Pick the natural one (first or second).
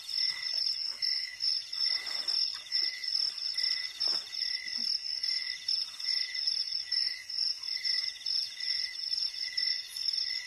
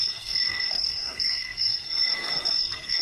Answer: first